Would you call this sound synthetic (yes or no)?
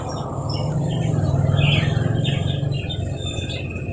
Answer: no